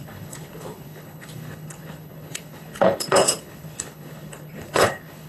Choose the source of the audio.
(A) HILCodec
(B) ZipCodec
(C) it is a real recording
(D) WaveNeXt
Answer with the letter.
A